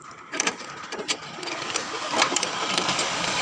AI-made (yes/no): yes